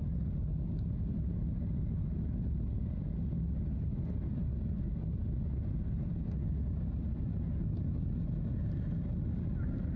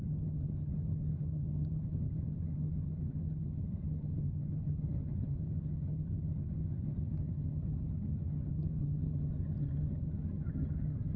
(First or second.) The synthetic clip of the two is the second